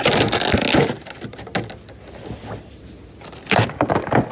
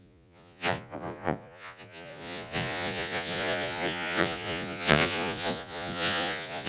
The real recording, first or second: first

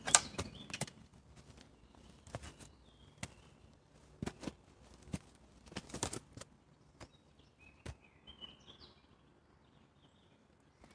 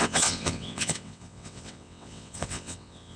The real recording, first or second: first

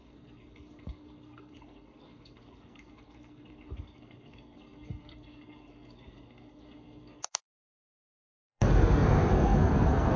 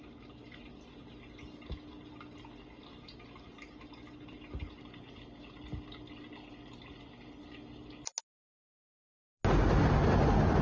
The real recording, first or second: second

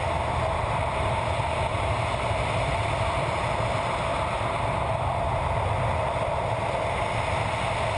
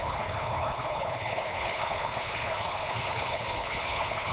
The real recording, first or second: first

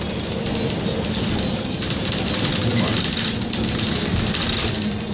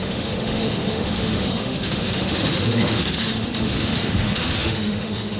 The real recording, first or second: first